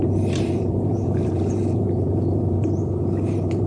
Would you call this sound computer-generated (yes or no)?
yes